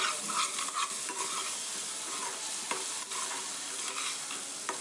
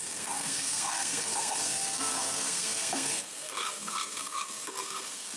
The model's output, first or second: second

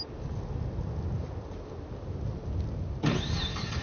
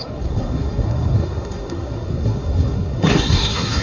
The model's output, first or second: second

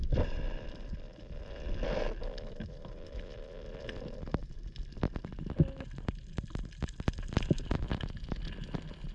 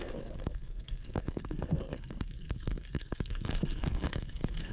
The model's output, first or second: second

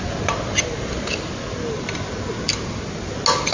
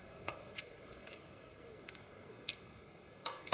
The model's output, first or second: second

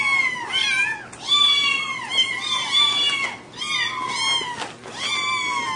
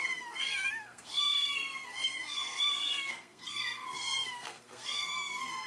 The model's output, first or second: second